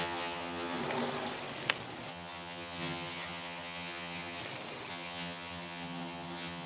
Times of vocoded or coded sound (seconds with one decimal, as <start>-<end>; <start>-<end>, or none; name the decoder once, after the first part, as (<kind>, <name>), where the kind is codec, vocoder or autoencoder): 0.0-0.8 (vocoder, HiFi-GAN); 2.1-4.4; 4.9-6.7